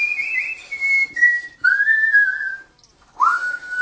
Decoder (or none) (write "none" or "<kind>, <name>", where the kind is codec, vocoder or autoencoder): none